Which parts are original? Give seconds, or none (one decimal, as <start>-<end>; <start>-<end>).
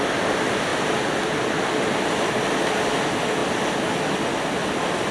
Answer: 0.7-1.6